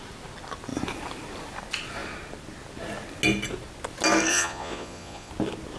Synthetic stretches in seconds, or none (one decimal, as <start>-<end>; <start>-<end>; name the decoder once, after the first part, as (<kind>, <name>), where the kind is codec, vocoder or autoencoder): 4.3-5.3 (vocoder, Vocos)